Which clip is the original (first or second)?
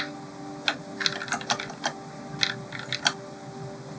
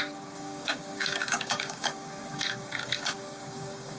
first